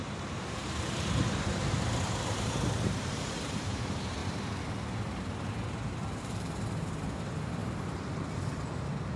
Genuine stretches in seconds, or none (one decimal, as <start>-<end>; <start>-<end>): 4.2-6.2; 7.6-9.2